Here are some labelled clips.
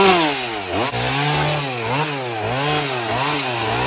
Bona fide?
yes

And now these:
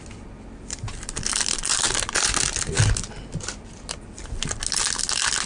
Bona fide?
yes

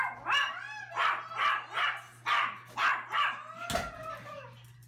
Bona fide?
yes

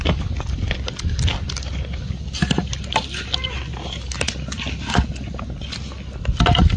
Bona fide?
yes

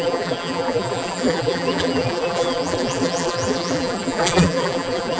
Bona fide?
no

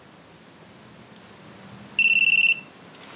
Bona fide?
yes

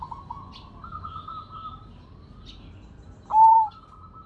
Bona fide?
yes